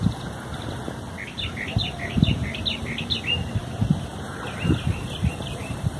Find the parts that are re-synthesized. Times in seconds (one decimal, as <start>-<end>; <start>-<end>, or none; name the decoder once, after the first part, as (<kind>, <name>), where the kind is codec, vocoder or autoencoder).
1.8-3.2 (vocoder, BigVGAN v2); 4.1-6.0

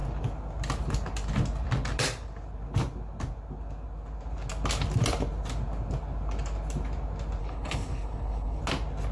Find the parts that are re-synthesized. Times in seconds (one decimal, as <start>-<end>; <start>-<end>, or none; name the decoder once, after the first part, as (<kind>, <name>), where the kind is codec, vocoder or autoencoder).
7.4-8.6 (codec, HILCodec)

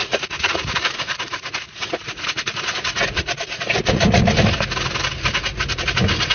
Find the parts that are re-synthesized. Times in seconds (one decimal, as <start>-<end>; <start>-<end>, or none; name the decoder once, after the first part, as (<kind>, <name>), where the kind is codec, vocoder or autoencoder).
0.0-4.2 (vocoder, Vocos)